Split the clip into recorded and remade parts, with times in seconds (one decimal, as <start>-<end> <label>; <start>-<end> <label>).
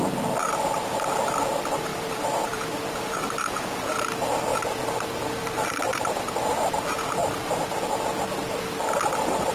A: 0.0-0.4 recorded; 0.4-1.1 remade; 1.1-1.9 recorded; 1.9-3.6 remade; 3.6-4.5 recorded; 4.5-6.3 remade; 6.3-9.5 recorded